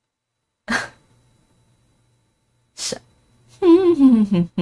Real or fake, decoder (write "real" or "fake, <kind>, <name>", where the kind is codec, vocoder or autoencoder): real